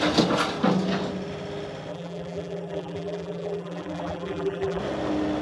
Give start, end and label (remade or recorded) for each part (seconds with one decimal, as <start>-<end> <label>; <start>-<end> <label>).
0.0-1.9 recorded; 1.9-4.8 remade; 4.8-5.4 recorded